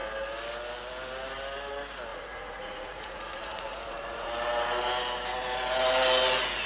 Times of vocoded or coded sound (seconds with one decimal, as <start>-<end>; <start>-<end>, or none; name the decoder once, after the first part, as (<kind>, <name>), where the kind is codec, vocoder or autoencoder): 2.1-4.3 (vocoder, Vocos)